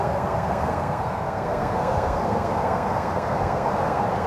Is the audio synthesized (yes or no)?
yes